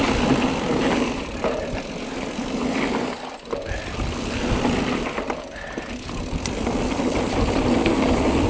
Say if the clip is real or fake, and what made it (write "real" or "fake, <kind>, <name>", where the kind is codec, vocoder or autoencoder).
fake, vocoder, BigVGAN v2